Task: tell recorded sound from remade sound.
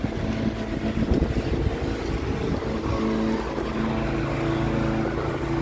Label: recorded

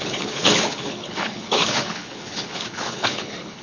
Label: remade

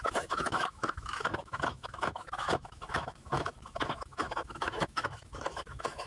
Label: remade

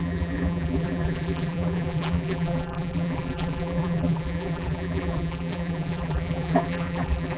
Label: remade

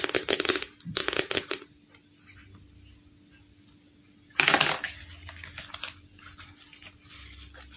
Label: recorded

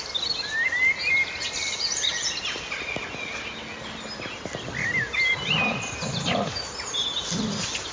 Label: recorded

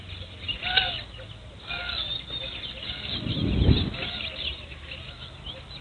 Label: recorded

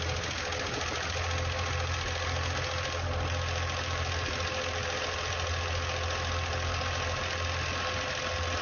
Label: recorded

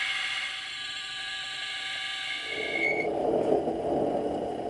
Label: recorded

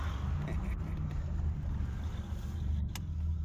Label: recorded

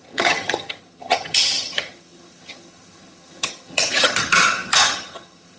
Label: remade